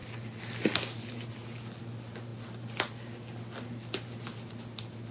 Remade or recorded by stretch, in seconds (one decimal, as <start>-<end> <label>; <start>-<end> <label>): 0.0-5.1 recorded